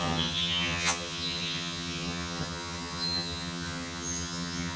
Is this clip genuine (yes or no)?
no